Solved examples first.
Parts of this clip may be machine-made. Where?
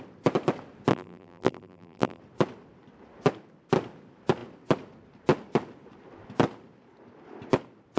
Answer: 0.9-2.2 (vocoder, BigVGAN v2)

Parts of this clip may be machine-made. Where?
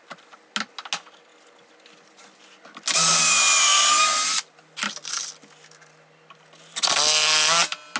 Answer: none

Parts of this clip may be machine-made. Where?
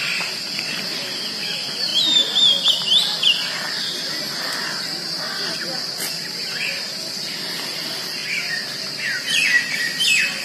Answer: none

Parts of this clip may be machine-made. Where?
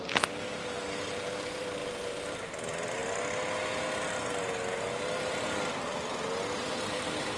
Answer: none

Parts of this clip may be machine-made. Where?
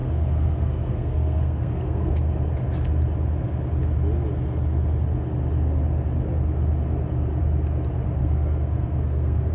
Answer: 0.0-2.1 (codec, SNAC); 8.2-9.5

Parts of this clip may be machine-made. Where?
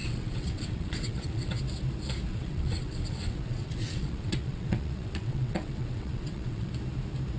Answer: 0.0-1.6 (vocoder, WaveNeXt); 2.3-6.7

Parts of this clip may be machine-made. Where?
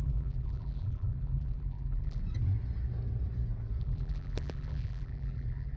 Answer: 0.0-2.2 (vocoder, BigVGAN v2); 3.8-5.8